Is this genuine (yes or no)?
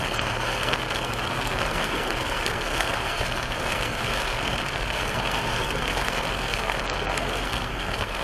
no